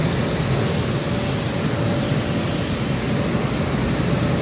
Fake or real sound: real